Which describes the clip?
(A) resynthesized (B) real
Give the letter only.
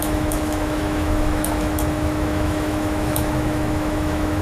A